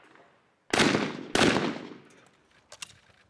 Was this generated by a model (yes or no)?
no